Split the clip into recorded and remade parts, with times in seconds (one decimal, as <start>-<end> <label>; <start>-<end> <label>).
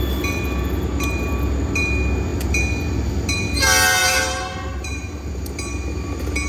0.0-4.0 recorded; 4.0-5.3 remade; 5.3-6.5 recorded